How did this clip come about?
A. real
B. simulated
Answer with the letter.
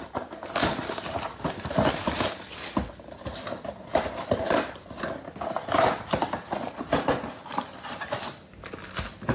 A